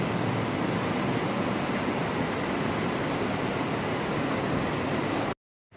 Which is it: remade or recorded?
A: recorded